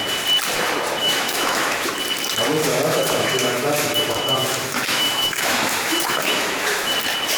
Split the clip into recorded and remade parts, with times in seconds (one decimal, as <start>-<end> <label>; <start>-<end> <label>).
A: 0.0-1.0 recorded; 1.0-1.9 remade; 1.9-2.7 recorded; 2.7-6.9 remade; 6.9-7.4 recorded